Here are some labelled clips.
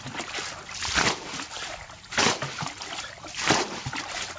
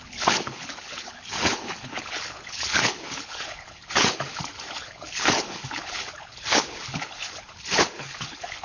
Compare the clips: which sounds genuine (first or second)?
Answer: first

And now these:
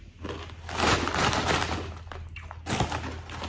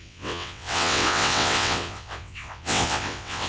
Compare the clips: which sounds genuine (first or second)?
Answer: first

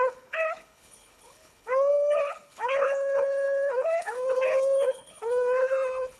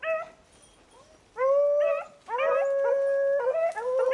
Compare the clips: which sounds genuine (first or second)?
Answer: second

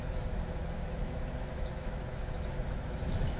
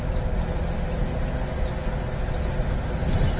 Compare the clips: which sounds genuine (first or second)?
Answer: second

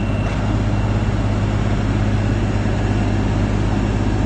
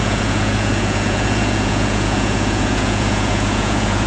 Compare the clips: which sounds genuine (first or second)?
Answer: first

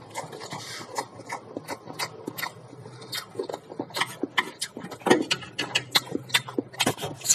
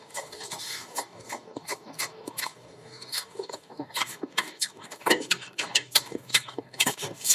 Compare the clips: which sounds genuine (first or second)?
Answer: first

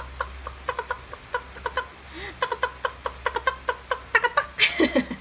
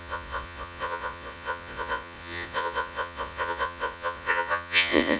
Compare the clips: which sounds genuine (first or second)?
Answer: first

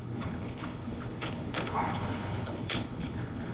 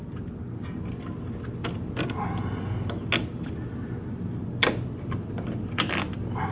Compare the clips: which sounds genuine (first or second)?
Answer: second